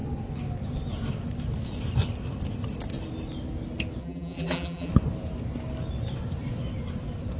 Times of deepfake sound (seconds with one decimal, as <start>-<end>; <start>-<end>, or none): 4.0-4.9